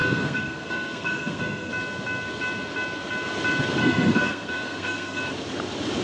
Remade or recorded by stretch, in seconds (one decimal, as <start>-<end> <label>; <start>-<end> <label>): 0.0-1.7 remade; 1.7-3.8 recorded; 3.8-5.2 remade; 5.2-6.0 recorded